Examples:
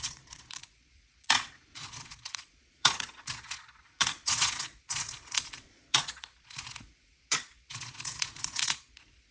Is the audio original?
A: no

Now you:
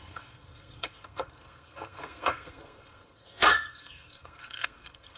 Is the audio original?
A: no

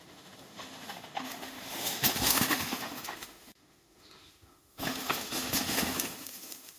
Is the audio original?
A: no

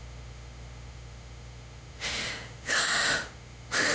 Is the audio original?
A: no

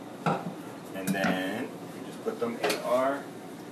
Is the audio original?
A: yes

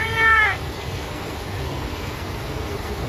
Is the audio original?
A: no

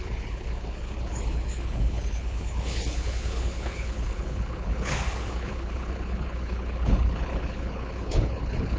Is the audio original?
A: no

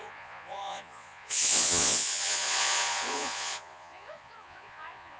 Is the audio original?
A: no